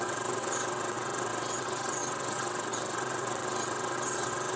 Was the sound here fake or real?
fake